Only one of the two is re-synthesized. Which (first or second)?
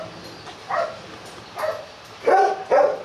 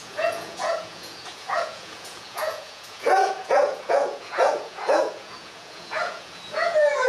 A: second